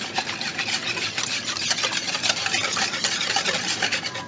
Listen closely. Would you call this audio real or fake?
real